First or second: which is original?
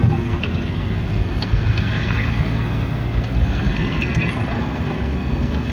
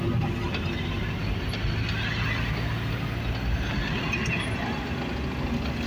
second